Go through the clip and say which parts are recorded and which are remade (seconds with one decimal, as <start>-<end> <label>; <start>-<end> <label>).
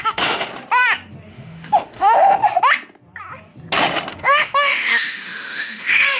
0.0-0.5 remade; 0.5-1.3 recorded; 1.3-2.4 remade; 2.4-4.1 recorded; 4.1-6.2 remade